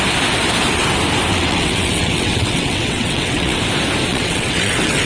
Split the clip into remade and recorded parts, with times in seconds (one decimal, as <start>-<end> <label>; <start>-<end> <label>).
0.0-1.3 recorded; 1.3-3.6 remade; 3.6-4.1 recorded; 4.1-5.1 remade